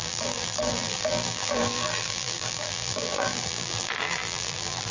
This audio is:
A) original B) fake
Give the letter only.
B